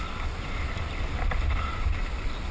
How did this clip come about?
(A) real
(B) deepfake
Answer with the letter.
A